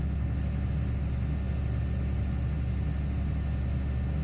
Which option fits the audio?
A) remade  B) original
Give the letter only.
B